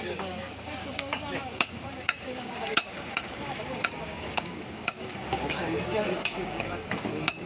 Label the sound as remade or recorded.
remade